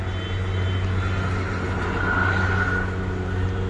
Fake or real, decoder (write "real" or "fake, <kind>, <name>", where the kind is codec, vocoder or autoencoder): real